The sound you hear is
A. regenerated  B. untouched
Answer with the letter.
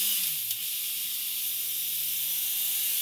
B